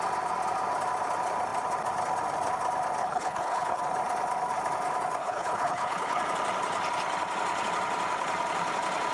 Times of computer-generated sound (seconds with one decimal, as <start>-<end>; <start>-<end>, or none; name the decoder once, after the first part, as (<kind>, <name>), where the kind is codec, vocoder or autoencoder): 3.0-3.8 (codec, HILCodec); 5.2-6.2